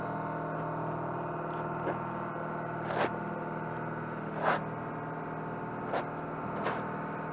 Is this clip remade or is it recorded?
recorded